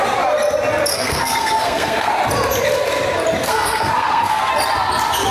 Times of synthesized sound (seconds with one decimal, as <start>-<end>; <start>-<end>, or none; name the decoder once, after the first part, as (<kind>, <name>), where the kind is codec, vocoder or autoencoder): 0.9-2.1 (codec, SNAC); 3.4-4.5